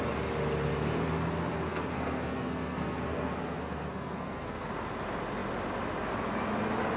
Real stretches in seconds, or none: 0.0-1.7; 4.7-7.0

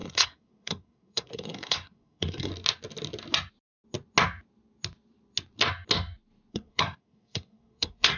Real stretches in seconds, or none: 2.5-6.5

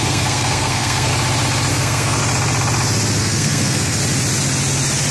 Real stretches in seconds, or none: 1.1-1.7; 2.2-3.2; 4.0-5.1